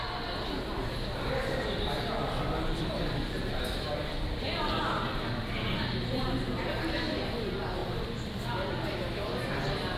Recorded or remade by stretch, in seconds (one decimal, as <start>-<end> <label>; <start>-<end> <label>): 0.0-10.0 recorded